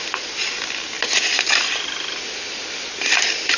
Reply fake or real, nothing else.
real